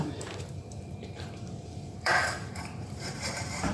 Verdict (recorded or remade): remade